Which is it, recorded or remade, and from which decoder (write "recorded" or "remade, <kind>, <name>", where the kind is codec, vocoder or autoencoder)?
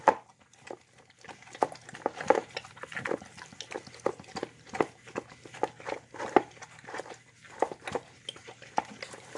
recorded